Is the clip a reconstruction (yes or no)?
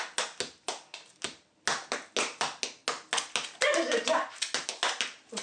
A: no